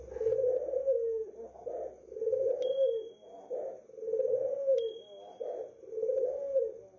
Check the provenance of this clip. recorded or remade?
recorded